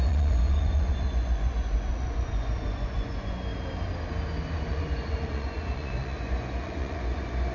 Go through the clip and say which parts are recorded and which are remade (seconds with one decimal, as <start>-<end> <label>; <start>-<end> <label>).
0.0-3.5 remade; 3.5-4.7 recorded; 4.7-7.5 remade